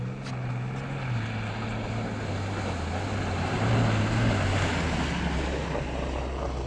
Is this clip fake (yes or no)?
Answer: no